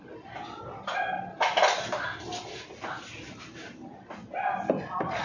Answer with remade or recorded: recorded